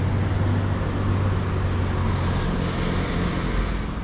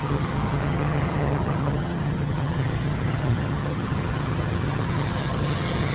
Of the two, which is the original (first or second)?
first